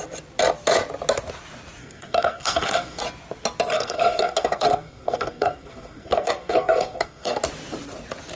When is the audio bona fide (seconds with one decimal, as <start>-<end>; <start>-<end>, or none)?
0.0-1.8; 3.0-3.7; 7.4-8.4

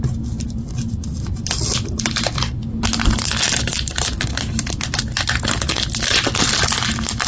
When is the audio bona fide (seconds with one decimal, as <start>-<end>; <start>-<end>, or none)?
0.0-7.3